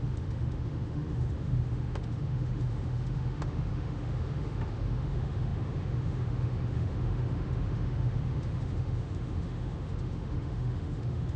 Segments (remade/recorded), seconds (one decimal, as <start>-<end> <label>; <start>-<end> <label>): 0.0-11.4 remade